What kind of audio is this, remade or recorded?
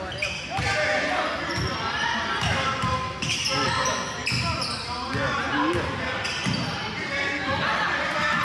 recorded